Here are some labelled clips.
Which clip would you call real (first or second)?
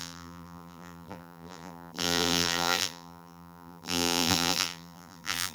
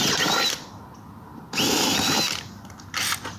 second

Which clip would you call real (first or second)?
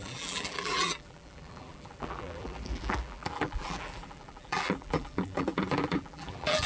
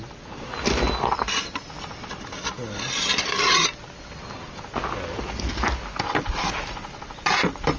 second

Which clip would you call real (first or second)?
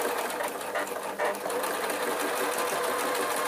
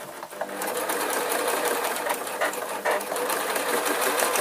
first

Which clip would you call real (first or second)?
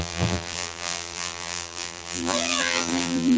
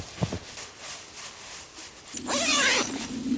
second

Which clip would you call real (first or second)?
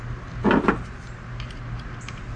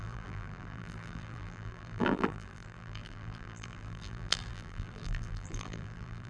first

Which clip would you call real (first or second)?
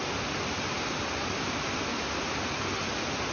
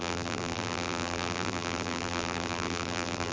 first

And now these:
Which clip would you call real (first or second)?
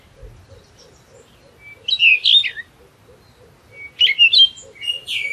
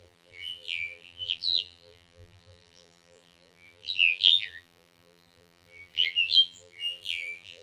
first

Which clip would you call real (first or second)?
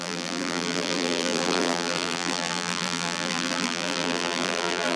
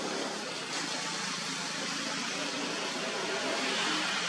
second